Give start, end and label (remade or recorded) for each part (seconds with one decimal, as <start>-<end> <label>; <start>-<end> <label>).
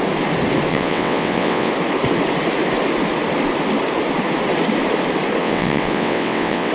0.0-0.7 recorded; 0.7-1.7 remade; 1.7-5.4 recorded; 5.4-6.7 remade